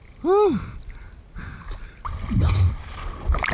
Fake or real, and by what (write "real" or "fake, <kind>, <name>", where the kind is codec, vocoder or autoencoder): real